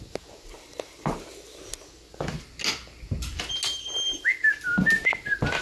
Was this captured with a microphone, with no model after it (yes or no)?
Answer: yes